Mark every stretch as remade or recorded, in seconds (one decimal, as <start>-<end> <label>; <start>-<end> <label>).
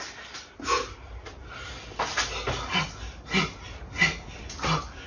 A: 0.0-5.1 recorded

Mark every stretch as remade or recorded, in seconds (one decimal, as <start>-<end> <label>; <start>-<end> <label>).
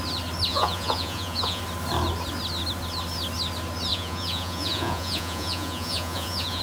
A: 0.0-0.5 recorded; 0.5-1.6 remade; 1.6-3.9 recorded; 3.9-6.6 remade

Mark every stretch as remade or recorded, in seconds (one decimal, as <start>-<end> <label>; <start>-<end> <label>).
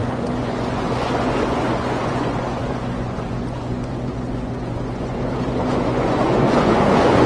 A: 0.0-7.3 remade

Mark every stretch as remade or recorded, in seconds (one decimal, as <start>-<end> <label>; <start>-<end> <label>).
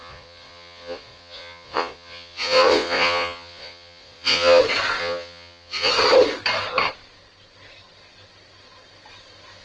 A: 0.0-4.6 remade; 4.6-5.0 recorded; 5.0-5.9 remade; 5.9-9.6 recorded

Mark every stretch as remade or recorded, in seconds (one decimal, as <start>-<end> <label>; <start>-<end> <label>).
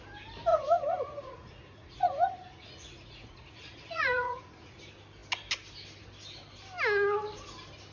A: 0.0-0.5 recorded; 0.5-4.8 remade; 4.8-7.9 recorded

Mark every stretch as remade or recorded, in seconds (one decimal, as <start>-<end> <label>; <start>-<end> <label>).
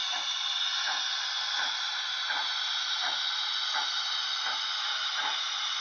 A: 0.0-5.8 recorded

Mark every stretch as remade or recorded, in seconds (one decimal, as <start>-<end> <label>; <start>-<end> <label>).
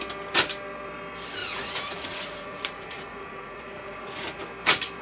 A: 0.0-1.4 recorded; 1.4-4.4 remade; 4.4-5.0 recorded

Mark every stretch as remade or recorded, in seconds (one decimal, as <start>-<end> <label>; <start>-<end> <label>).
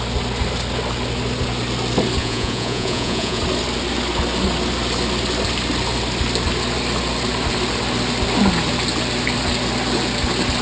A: 0.0-2.2 recorded; 2.2-3.4 remade; 3.4-10.6 recorded